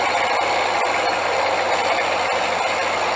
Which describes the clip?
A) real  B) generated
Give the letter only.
A